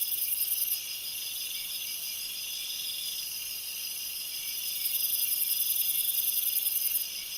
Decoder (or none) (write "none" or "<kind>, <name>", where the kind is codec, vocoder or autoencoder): none